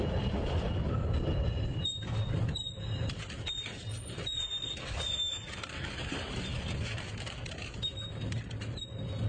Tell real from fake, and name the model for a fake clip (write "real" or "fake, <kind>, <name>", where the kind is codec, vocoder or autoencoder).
real